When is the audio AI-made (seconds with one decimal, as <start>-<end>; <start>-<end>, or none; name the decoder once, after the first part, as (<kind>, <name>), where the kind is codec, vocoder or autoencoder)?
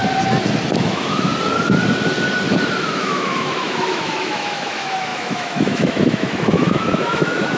0.8-1.3 (autoencoder, DAC-VAE); 2.9-7.6